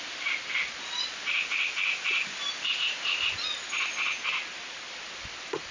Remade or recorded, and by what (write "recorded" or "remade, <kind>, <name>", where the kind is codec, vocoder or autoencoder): recorded